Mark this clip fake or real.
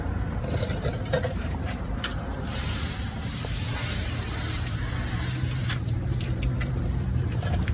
fake